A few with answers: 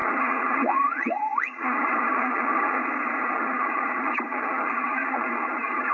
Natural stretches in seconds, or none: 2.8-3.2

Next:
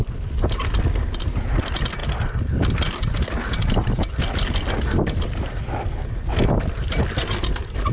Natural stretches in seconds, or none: 0.0-5.0; 5.5-7.9

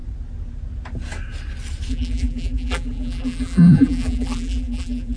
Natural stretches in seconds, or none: 0.0-1.9

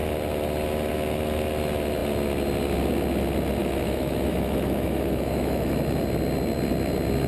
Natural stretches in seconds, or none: 0.0-3.6; 5.7-7.3

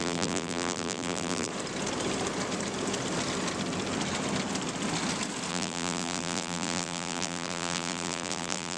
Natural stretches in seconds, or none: 1.5-5.5

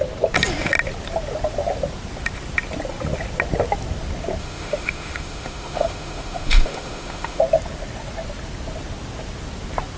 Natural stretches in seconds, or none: 0.0-4.4; 7.4-10.0

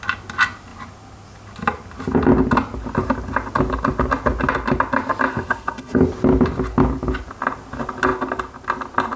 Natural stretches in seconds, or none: 0.0-5.3; 6.0-9.2